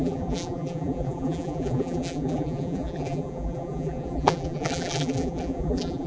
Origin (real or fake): fake